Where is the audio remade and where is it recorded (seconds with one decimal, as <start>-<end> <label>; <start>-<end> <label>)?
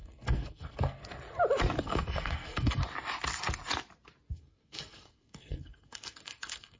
0.0-1.0 remade; 1.0-1.8 recorded; 1.8-2.8 remade; 2.8-4.3 recorded; 4.3-6.8 remade